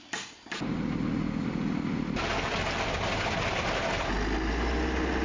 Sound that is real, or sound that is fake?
real